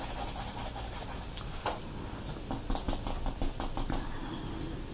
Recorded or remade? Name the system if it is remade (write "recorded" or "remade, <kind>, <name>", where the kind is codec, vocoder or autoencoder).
recorded